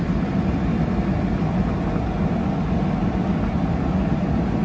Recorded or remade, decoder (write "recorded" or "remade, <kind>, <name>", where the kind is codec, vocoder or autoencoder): recorded